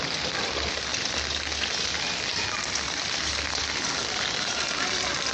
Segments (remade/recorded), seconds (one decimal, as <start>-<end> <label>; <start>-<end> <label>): 0.0-5.3 recorded

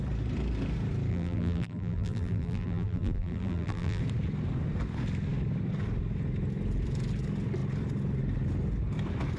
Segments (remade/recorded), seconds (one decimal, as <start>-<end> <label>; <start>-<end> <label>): 0.0-1.1 recorded; 1.1-4.0 remade; 4.0-9.4 recorded